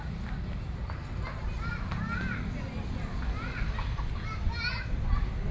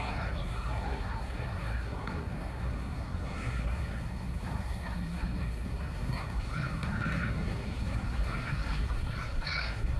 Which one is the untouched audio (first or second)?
first